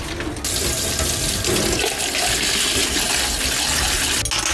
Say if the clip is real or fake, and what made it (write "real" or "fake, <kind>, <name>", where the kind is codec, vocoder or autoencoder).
real